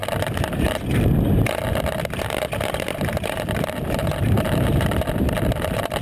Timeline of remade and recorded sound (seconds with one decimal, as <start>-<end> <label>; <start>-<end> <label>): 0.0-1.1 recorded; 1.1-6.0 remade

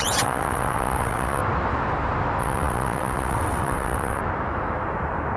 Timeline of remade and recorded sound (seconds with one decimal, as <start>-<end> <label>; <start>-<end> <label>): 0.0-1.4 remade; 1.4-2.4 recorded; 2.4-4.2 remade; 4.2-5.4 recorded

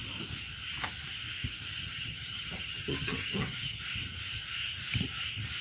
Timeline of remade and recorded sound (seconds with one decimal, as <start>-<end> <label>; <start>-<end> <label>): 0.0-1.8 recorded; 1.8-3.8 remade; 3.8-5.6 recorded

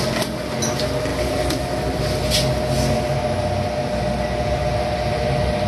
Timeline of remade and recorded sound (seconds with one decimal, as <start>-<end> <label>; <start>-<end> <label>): 0.0-1.1 recorded; 1.1-2.0 remade; 2.0-5.7 recorded

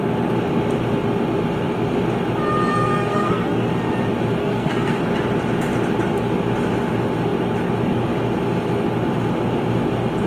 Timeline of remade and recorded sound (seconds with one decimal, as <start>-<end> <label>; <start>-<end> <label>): 0.0-2.7 recorded; 2.7-3.7 remade; 3.7-4.4 recorded; 4.4-5.0 remade; 5.0-10.3 recorded